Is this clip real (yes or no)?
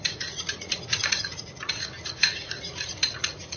no